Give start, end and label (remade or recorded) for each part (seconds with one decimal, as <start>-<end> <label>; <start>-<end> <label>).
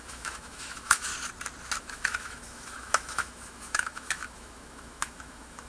0.0-1.1 remade; 1.1-1.8 recorded; 1.8-5.7 remade